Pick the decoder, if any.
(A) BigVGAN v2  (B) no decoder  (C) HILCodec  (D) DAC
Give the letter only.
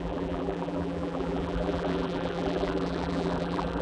A